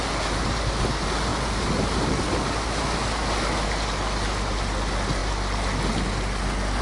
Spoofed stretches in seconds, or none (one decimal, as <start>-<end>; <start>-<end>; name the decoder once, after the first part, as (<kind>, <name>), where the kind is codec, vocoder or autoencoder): 1.3-2.1 (vocoder, BigVGAN v2)